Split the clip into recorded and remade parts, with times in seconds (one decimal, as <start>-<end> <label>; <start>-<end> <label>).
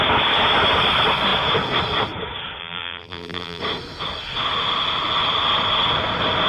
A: 0.0-2.6 recorded; 2.6-3.6 remade; 3.6-6.5 recorded